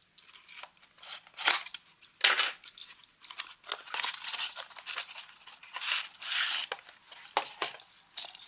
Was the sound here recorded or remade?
recorded